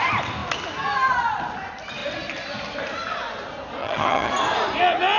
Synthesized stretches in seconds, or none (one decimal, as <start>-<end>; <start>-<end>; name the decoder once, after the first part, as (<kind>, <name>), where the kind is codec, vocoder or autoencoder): 3.8-4.3 (vocoder, HiFi-GAN)